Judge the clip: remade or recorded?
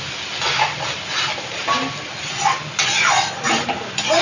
recorded